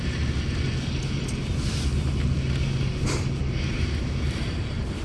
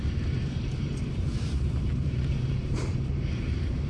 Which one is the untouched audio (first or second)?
first